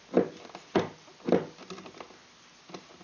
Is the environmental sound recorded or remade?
recorded